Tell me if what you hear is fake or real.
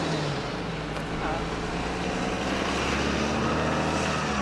real